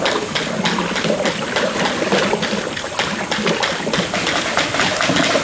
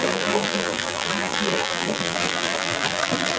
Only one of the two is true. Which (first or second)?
first